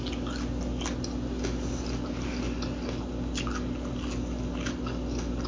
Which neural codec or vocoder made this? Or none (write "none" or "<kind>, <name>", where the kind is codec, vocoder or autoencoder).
none